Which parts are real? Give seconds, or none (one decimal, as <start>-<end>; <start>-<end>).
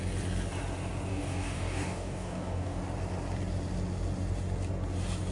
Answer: 0.0-1.1; 2.8-5.3